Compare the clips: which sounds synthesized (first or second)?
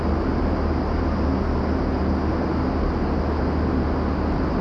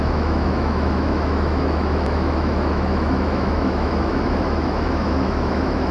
second